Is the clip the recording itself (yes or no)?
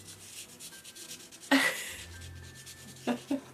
yes